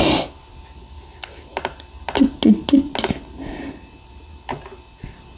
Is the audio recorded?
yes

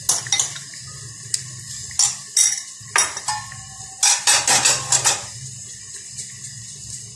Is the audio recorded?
yes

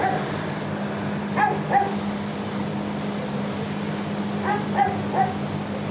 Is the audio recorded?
yes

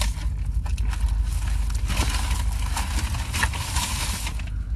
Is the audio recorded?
yes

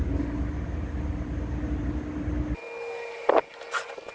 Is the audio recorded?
yes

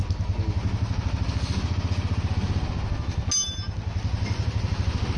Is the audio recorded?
yes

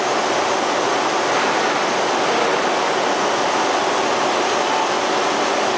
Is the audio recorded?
yes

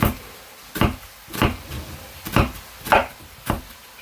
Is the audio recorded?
yes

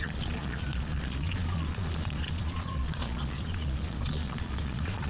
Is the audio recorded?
no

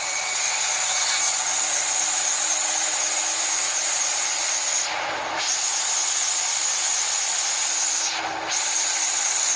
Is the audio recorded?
yes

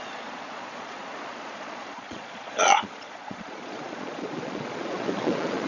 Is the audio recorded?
no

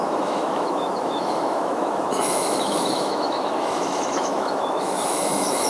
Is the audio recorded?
no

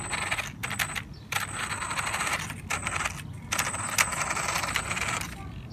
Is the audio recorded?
yes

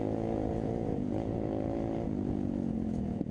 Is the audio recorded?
no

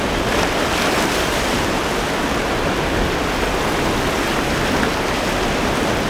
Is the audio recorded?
yes